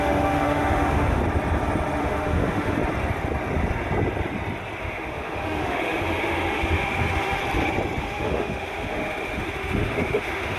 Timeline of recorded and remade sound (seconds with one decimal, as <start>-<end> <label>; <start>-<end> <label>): 0.0-1.2 remade; 1.2-2.0 recorded; 2.0-2.8 remade; 2.8-4.8 recorded; 4.8-7.4 remade; 7.4-8.0 recorded; 8.0-10.6 remade